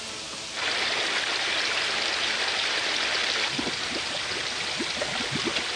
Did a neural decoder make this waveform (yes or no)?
no